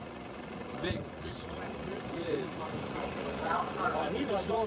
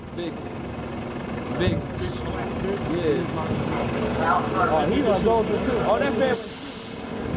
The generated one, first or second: first